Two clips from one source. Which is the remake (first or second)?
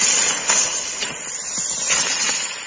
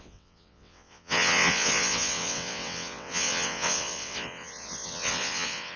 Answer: second